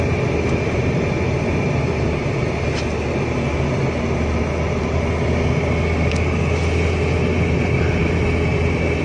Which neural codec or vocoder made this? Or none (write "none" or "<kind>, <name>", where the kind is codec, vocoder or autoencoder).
none